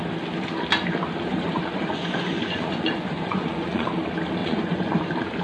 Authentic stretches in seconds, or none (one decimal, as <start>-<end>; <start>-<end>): 0.0-1.3; 3.9-4.4; 5.0-5.4

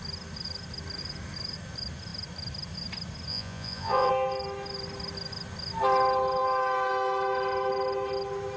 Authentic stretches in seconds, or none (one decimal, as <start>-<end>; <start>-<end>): 0.0-3.3; 4.1-8.6